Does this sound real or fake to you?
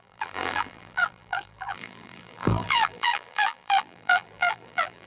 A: fake